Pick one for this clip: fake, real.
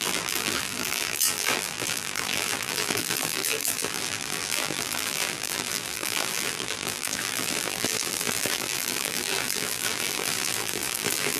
fake